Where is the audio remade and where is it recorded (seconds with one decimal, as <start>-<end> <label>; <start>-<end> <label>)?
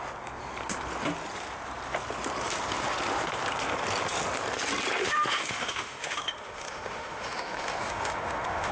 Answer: 0.0-5.0 recorded; 5.0-8.7 remade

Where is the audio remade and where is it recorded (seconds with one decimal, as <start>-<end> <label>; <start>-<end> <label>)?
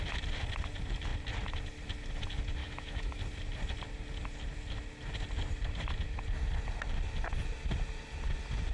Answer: 0.0-2.6 recorded; 2.6-3.2 remade; 3.2-8.7 recorded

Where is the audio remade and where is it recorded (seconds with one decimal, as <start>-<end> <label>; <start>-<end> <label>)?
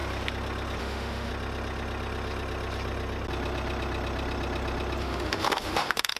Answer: 0.0-0.8 recorded; 0.8-1.3 remade; 1.3-5.0 recorded; 5.0-6.2 remade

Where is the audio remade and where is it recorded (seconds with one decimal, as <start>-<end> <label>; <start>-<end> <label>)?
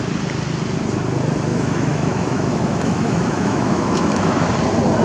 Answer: 0.0-1.5 recorded; 1.5-4.5 remade; 4.5-5.0 recorded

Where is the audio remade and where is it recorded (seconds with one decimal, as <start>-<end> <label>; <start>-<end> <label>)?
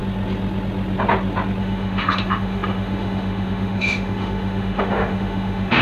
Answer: 0.0-1.6 recorded; 1.6-5.8 remade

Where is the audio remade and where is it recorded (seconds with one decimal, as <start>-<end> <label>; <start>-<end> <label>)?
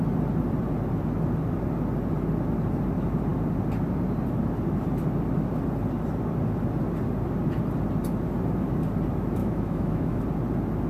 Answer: 0.0-9.4 recorded; 9.4-10.2 remade; 10.2-10.9 recorded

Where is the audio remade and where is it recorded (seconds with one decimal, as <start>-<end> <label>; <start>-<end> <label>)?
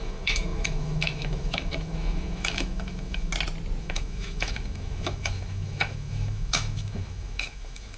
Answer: 0.0-3.3 remade; 3.3-3.8 recorded; 3.8-8.0 remade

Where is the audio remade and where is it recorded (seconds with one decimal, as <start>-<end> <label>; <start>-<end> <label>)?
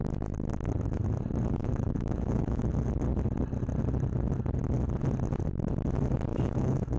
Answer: 0.0-1.6 recorded; 1.6-2.6 remade; 2.6-6.3 recorded; 6.3-7.0 remade